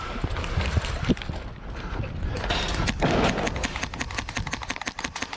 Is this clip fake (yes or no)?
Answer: no